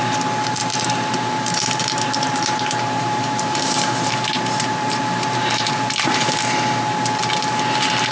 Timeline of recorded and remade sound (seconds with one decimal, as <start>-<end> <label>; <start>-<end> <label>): 0.0-0.6 recorded; 0.6-5.5 remade; 5.5-8.1 recorded